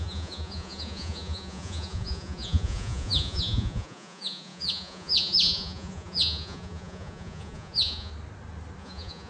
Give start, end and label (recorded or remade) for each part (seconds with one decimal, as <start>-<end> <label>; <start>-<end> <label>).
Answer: 0.0-8.1 remade; 8.1-8.8 recorded; 8.8-9.3 remade